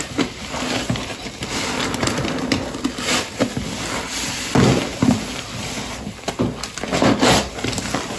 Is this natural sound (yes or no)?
yes